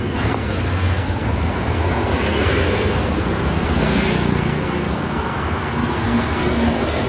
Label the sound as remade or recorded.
remade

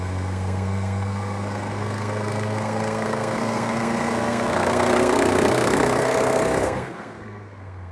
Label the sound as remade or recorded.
remade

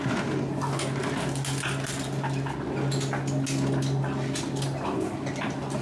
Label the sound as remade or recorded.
recorded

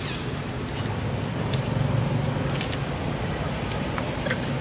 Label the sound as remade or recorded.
recorded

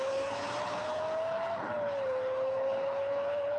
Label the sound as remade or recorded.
remade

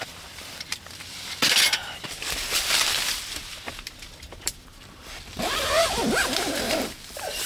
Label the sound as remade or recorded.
remade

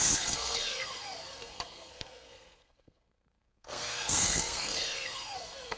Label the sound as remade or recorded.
remade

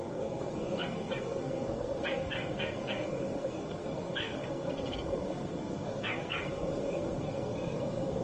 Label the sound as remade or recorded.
remade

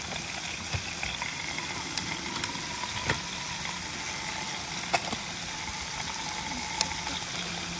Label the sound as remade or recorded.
recorded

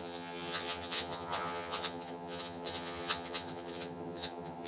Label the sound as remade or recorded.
remade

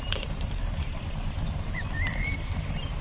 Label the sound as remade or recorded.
remade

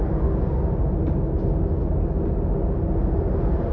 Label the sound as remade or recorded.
recorded